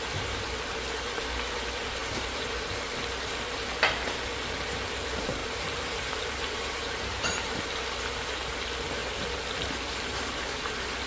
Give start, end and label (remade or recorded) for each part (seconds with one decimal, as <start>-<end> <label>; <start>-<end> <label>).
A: 0.0-2.0 recorded; 2.0-2.6 remade; 2.6-5.4 recorded; 5.4-7.6 remade; 7.6-11.1 recorded